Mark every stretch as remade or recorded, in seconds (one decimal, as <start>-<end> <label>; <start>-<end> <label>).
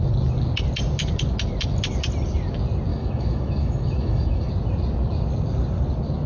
0.0-2.9 recorded; 2.9-4.5 remade; 4.5-6.3 recorded